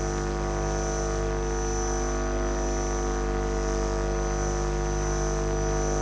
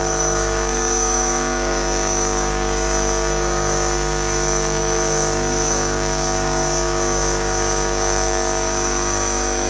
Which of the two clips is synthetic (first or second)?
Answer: second